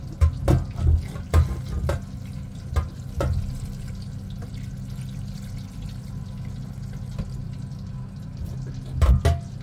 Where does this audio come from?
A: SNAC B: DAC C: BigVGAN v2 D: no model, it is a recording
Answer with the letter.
D